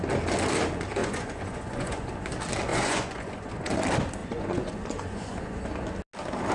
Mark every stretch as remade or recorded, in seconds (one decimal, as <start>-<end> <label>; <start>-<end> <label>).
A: 0.0-1.0 recorded; 1.0-2.1 remade; 2.1-2.7 recorded; 2.7-3.7 remade; 3.7-4.2 recorded; 4.2-5.6 remade; 5.6-6.5 recorded